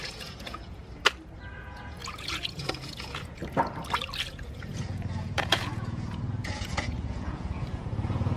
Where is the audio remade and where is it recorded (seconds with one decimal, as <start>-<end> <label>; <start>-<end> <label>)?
0.0-0.8 remade; 0.8-1.6 recorded; 1.6-3.4 remade; 3.4-4.3 recorded; 4.3-8.4 remade